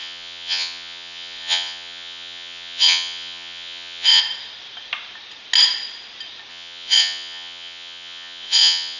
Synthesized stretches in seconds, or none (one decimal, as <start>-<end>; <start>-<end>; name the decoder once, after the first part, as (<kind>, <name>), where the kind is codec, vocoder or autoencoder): 0.0-4.2 (vocoder, Vocos); 6.5-9.0